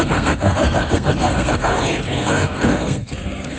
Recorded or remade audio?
remade